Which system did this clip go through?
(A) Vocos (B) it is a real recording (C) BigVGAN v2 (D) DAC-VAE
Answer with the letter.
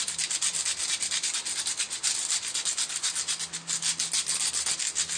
B